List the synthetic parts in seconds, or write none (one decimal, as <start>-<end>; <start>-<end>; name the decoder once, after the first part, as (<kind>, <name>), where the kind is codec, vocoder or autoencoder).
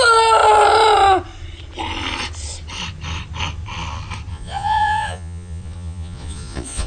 4.3-6.9 (vocoder, Vocos)